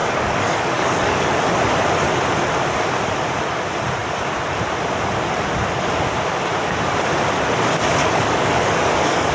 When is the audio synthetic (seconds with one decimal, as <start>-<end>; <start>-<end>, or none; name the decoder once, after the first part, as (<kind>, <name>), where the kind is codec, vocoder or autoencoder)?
0.0-1.3 (codec, DAC); 8.0-9.3